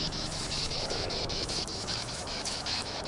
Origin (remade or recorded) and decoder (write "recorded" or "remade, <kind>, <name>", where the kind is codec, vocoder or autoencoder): remade, autoencoder, DAC-VAE